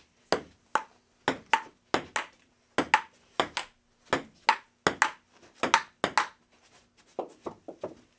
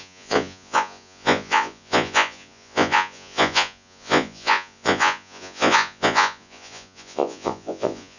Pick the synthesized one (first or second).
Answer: second